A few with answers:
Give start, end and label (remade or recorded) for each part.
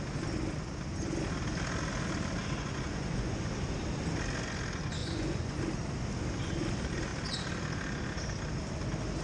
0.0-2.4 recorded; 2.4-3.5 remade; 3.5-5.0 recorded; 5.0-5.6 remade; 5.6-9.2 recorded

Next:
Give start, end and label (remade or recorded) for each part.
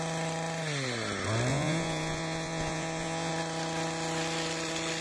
0.0-1.5 recorded; 1.5-3.3 remade; 3.3-5.0 recorded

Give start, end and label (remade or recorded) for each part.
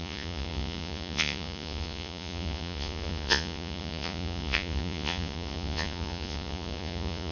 0.0-7.3 remade